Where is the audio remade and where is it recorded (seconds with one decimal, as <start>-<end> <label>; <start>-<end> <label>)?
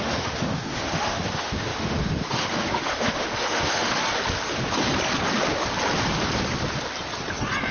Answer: 0.0-3.9 remade; 3.9-7.7 recorded